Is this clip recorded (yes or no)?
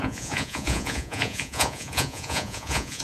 no